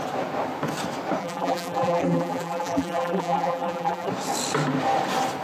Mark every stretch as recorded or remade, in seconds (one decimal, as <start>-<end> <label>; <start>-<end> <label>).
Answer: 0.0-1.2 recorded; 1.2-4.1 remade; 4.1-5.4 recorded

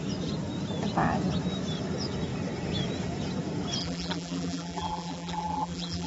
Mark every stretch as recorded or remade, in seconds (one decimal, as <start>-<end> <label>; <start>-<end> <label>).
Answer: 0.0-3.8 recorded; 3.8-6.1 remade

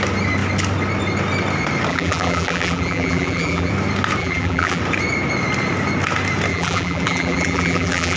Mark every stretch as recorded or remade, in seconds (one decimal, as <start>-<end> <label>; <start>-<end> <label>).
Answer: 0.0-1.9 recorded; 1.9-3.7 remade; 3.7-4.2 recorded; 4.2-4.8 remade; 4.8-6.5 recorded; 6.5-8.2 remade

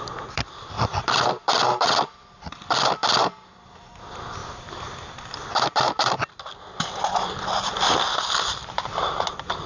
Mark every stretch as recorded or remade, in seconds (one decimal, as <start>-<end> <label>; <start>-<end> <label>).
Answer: 0.0-9.7 remade

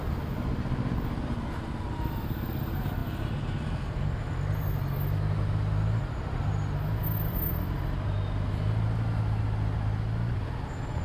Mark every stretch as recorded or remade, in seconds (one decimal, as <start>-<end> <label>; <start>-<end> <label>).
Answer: 0.0-11.0 recorded

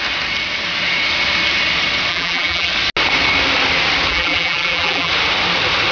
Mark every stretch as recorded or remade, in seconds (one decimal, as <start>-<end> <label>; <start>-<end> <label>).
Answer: 0.0-2.1 recorded; 2.1-2.7 remade; 2.7-4.1 recorded; 4.1-5.1 remade; 5.1-5.9 recorded